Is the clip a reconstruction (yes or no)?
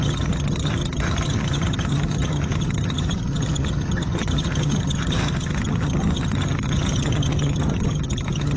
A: yes